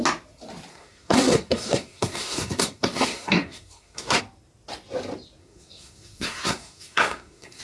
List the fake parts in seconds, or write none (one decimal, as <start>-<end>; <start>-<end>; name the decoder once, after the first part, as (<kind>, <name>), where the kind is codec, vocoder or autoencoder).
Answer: 0.7-4.2 (codec, SNAC); 5.4-7.6